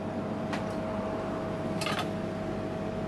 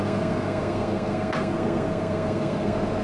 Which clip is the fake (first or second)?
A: second